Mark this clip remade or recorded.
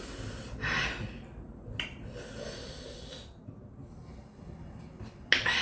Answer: recorded